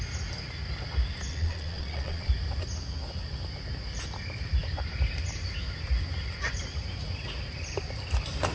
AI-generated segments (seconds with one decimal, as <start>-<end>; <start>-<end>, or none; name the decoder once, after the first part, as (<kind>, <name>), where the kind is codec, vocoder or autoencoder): 1.3-2.3 (vocoder, Vocos)